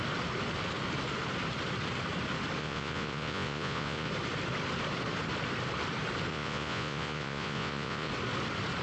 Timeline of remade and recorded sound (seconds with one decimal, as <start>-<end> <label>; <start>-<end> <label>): 0.0-2.6 recorded; 2.6-4.1 remade; 4.1-6.3 recorded; 6.3-8.1 remade; 8.1-8.8 recorded

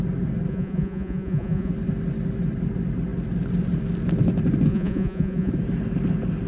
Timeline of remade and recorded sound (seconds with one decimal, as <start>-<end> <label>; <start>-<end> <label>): 0.0-0.5 recorded; 0.5-1.7 remade; 1.7-4.7 recorded; 4.7-5.5 remade; 5.5-6.5 recorded

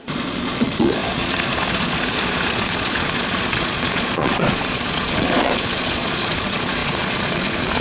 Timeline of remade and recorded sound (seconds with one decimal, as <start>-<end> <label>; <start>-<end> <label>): 0.0-7.8 remade

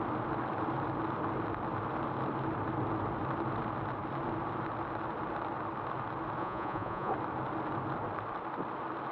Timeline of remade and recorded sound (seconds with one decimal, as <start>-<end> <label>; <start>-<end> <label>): 0.0-6.4 recorded; 6.4-7.1 remade; 7.1-9.1 recorded

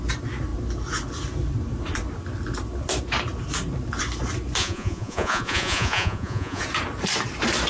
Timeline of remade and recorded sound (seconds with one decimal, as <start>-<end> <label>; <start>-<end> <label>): 0.0-4.6 recorded; 4.6-6.6 remade; 6.6-7.7 recorded

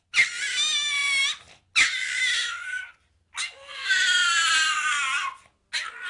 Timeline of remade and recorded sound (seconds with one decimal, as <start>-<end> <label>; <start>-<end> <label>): 0.0-6.1 recorded

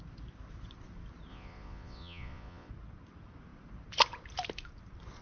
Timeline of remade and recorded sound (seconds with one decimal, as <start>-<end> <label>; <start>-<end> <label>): 0.0-1.3 recorded; 1.3-2.7 remade; 2.7-5.2 recorded

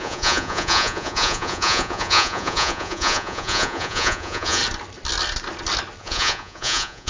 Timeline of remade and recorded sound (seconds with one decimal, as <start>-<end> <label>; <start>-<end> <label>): 0.0-4.6 remade; 4.6-6.0 recorded; 6.0-7.1 remade